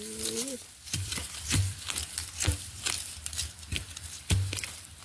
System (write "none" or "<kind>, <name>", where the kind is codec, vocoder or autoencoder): vocoder, BigVGAN v2